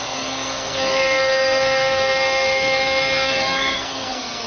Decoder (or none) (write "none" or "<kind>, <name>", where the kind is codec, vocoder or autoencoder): codec, SNAC